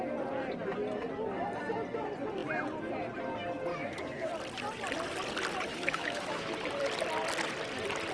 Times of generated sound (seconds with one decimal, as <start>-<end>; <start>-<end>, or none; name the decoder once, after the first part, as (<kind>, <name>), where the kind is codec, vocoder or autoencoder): 3.7-4.3 (autoencoder, DAC-VAE); 5.7-6.5